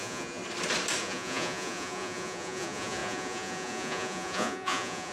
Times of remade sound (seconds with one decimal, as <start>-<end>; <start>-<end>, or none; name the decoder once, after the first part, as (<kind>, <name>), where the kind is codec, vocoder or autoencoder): 0.0-0.4 (vocoder, Vocos); 1.0-5.1